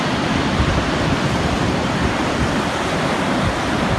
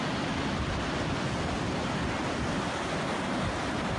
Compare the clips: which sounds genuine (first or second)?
second